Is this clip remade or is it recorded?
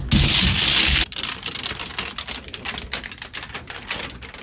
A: recorded